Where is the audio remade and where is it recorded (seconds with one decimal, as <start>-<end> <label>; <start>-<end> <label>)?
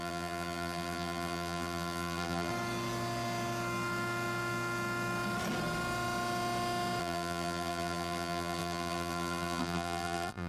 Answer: 0.0-2.5 remade; 2.5-7.0 recorded; 7.0-10.5 remade